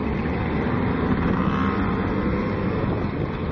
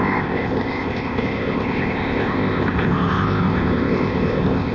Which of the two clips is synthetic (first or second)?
second